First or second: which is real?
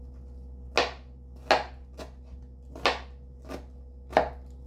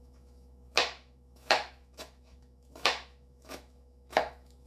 first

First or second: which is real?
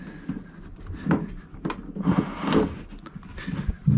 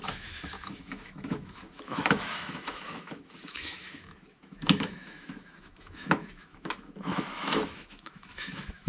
first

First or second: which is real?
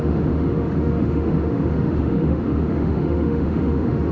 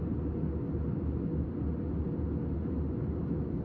second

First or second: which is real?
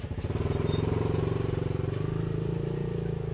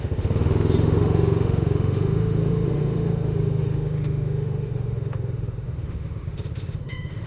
first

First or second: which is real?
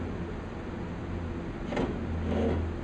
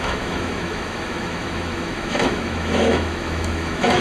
first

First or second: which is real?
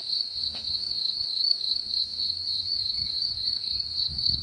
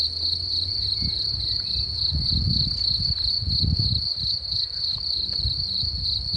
second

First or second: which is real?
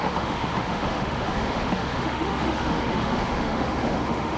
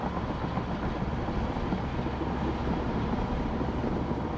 second